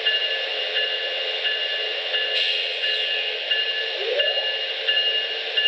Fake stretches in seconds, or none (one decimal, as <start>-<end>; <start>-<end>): 0.5-3.5